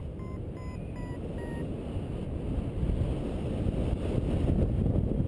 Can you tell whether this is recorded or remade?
recorded